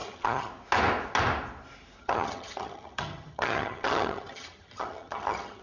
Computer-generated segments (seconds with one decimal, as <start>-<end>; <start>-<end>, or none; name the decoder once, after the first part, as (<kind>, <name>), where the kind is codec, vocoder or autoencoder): 0.0-0.5 (vocoder, HiFi-GAN); 2.0-5.6